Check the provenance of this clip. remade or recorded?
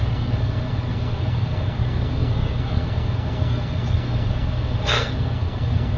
remade